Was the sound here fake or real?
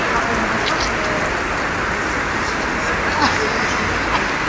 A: real